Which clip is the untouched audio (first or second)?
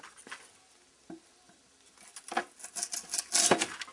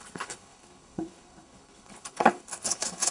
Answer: first